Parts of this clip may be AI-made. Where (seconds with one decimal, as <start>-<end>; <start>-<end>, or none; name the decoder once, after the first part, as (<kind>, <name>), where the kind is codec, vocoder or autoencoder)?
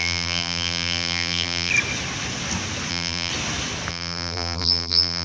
0.0-1.7 (vocoder, BigVGAN v2); 2.9-3.3; 3.9-5.2